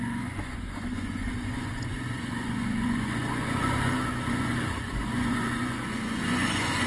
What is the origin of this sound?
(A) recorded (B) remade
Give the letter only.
B